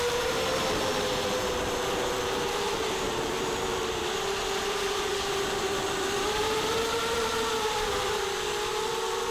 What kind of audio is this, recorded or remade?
remade